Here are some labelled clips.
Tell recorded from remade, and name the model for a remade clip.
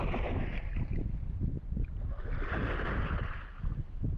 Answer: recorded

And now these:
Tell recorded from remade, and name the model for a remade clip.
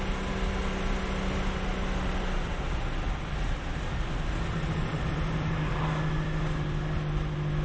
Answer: recorded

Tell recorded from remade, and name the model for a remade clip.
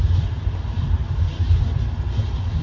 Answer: recorded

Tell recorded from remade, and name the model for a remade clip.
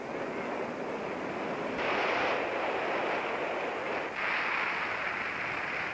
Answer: recorded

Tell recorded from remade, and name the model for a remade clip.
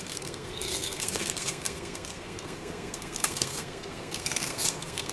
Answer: remade, codec, SNAC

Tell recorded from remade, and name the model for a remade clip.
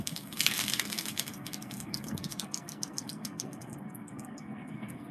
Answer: remade, codec, SNAC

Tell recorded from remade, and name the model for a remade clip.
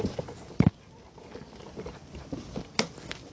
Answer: recorded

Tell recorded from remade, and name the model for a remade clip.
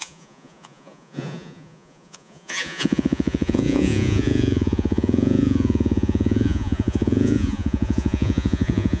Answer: remade, vocoder, Vocos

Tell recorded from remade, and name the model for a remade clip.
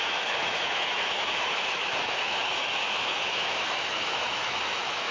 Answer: remade, autoencoder, DAC-VAE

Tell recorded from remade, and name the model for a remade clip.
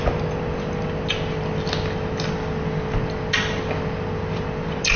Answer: recorded